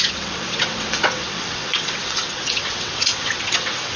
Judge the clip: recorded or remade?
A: remade